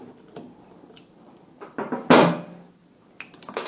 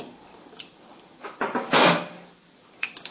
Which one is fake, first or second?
second